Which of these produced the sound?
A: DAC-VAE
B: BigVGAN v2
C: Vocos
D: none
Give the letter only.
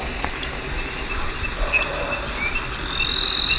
D